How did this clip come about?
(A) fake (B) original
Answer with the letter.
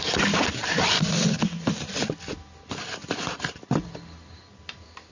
B